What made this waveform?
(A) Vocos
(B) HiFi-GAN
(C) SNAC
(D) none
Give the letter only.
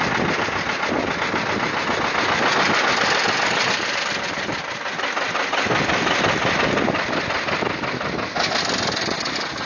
D